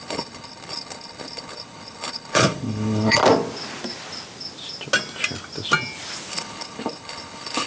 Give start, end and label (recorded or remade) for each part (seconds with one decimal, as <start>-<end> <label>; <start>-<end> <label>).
0.0-3.2 remade; 3.2-6.3 recorded; 6.3-7.7 remade